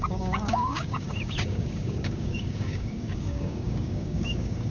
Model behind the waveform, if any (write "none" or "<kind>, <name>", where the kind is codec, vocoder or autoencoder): codec, DAC